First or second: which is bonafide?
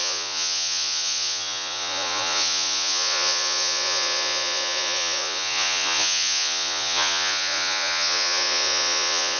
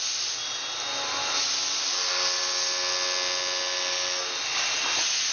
second